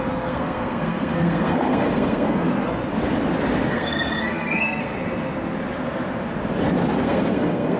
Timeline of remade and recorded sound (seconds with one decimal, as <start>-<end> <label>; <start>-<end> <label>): 0.0-2.8 remade; 2.8-3.7 recorded; 3.7-4.9 remade; 4.9-7.0 recorded; 7.0-7.8 remade